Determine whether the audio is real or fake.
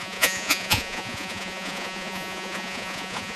fake